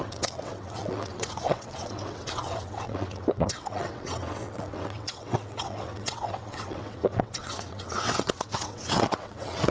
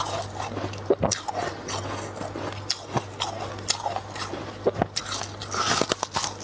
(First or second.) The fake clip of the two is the first